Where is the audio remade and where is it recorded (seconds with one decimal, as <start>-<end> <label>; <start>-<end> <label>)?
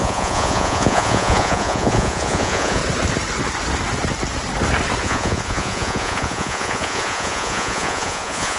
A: 0.0-2.8 remade; 2.8-5.0 recorded; 5.0-8.6 remade